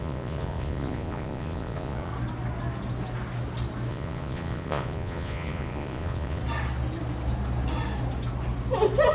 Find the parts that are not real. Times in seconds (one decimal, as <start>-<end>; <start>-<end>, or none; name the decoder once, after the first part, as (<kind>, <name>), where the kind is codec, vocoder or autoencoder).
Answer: 0.0-2.1 (vocoder, Vocos); 3.9-6.4